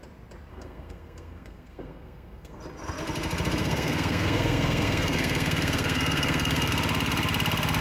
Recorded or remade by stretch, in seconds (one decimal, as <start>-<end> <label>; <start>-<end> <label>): 0.0-0.5 recorded; 0.5-2.6 remade; 2.6-3.6 recorded; 3.6-6.7 remade; 6.7-7.8 recorded